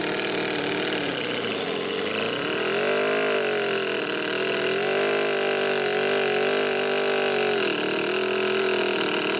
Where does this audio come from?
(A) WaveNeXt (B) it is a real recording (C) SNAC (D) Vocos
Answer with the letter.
B